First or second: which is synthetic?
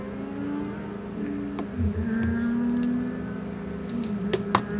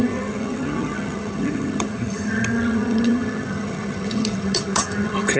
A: second